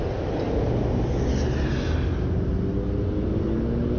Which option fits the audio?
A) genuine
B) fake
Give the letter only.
A